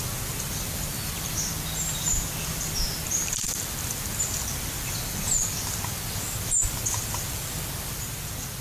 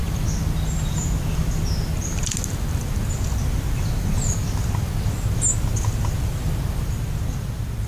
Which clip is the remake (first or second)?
first